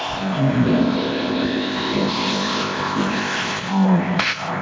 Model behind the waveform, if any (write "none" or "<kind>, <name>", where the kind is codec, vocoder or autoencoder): codec, ZipCodec